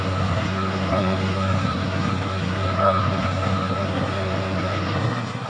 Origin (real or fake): fake